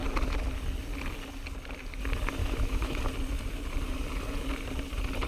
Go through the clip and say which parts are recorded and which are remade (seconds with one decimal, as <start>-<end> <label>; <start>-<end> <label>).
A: 0.0-2.4 recorded; 2.4-3.0 remade; 3.0-5.3 recorded